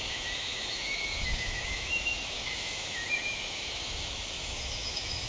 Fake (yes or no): yes